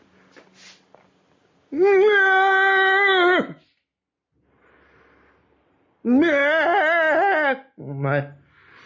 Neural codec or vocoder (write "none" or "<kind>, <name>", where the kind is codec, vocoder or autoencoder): none